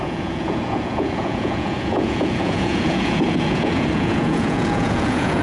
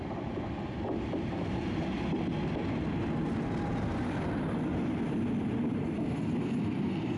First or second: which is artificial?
first